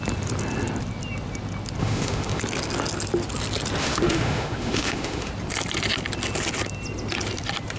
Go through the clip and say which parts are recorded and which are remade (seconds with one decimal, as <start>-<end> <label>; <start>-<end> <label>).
0.0-1.8 recorded; 1.8-2.4 remade; 2.4-3.8 recorded; 3.8-5.3 remade; 5.3-7.8 recorded